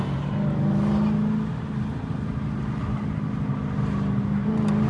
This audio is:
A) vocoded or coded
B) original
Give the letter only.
B